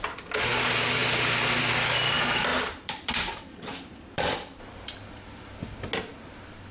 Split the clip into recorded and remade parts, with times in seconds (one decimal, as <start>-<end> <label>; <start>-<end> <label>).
0.0-2.5 recorded; 2.5-5.6 remade; 5.6-6.7 recorded